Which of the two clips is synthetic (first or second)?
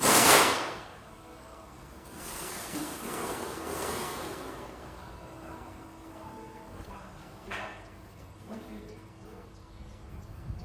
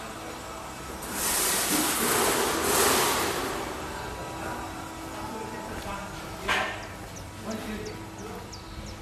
first